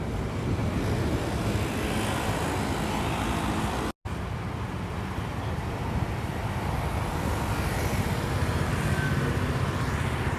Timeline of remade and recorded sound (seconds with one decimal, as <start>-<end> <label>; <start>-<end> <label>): 0.0-0.6 recorded; 0.6-3.6 remade; 3.6-10.4 recorded